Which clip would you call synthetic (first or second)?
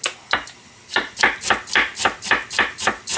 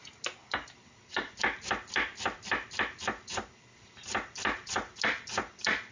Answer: second